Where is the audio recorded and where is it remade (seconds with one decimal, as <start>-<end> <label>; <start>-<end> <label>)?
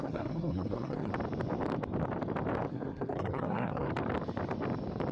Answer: 0.0-1.1 remade; 1.1-2.7 recorded; 2.7-3.9 remade; 3.9-5.1 recorded